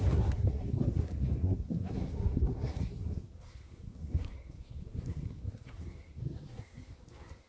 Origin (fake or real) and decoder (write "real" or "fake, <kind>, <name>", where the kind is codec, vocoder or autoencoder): fake, codec, SNAC